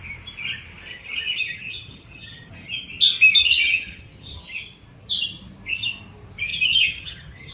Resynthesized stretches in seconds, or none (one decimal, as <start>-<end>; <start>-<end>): 0.9-2.5; 3.4-4.4; 6.5-7.5